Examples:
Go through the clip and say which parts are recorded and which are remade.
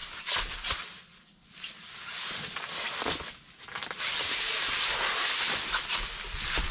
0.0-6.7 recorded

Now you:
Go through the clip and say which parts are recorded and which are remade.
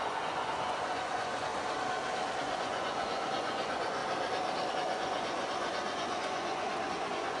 0.0-1.5 remade; 1.5-2.4 recorded; 2.4-4.0 remade; 4.0-4.7 recorded; 4.7-7.4 remade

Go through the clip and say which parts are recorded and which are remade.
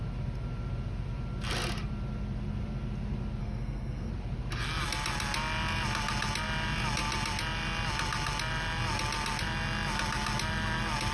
0.0-3.4 recorded; 3.4-4.1 remade; 4.1-11.1 recorded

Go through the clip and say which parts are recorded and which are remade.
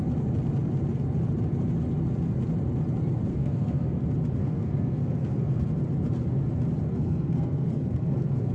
0.0-3.3 recorded; 3.3-4.0 remade; 4.0-4.4 recorded; 4.4-5.7 remade; 5.7-6.9 recorded; 6.9-8.5 remade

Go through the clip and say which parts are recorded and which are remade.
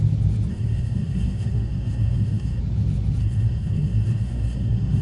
0.0-0.5 recorded; 0.5-2.6 remade; 2.6-3.2 recorded; 3.2-5.0 remade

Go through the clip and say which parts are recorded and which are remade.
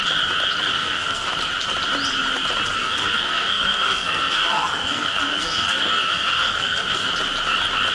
0.0-0.7 recorded; 0.7-1.3 remade; 1.3-2.8 recorded; 2.8-7.1 remade; 7.1-7.9 recorded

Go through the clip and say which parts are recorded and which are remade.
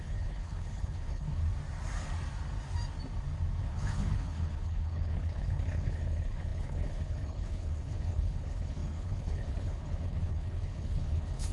0.0-1.4 remade; 1.4-3.6 recorded; 3.6-11.5 remade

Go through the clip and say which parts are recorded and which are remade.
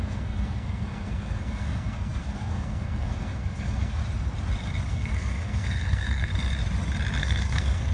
0.0-4.0 remade; 4.0-4.9 recorded; 4.9-6.3 remade; 6.3-7.2 recorded; 7.2-7.9 remade